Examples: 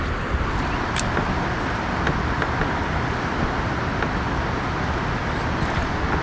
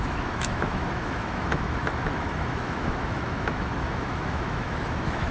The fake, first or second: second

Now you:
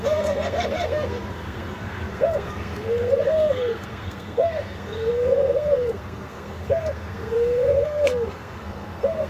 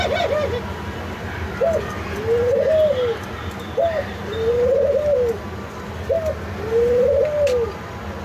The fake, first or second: first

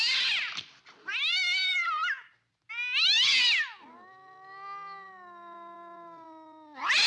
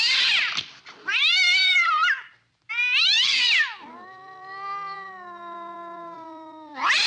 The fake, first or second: second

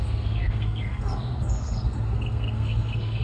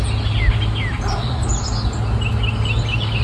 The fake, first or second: first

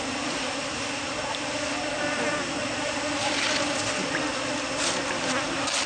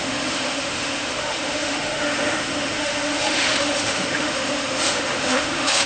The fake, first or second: second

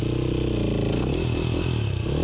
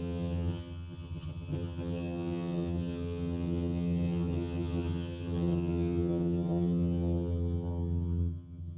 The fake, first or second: second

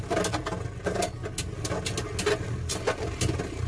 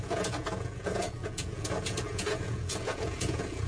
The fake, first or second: second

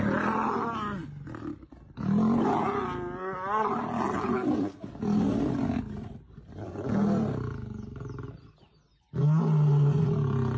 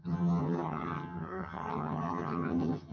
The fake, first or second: second